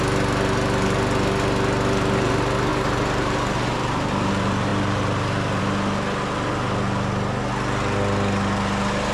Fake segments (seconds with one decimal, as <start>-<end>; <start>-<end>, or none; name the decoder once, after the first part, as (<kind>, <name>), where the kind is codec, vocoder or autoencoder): 2.7-4.3 (vocoder, BigVGAN v2)